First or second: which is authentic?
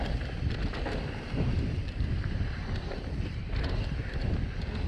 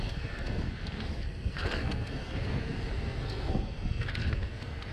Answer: first